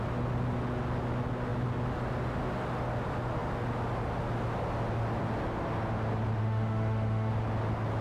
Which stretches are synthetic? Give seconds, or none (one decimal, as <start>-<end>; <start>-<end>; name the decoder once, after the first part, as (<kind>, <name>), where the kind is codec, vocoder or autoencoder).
6.4-7.3 (autoencoder, DAC-VAE)